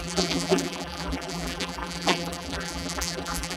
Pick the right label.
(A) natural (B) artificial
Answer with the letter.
B